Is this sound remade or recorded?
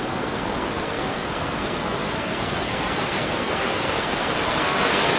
remade